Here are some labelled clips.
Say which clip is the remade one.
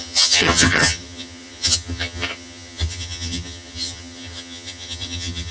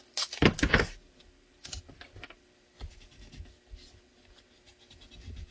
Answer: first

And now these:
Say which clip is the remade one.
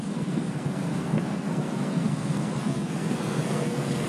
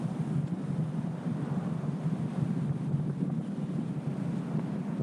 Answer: first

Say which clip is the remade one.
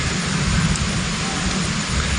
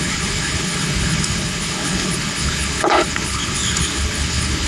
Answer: second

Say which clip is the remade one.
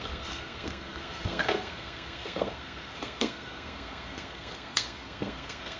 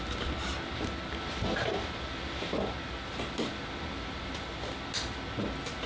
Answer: first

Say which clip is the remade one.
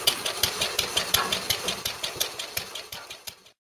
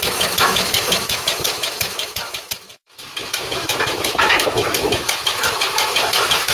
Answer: second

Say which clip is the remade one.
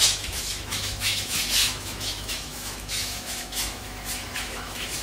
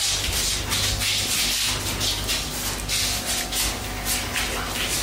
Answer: first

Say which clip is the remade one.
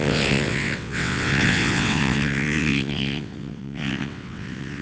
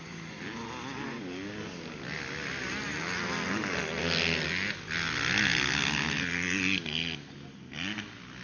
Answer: first